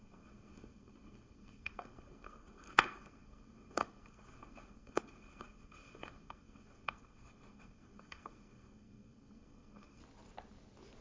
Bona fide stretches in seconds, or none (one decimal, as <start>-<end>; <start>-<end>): 10.0-11.0